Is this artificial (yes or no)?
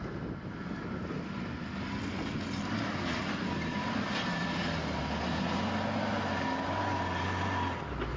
no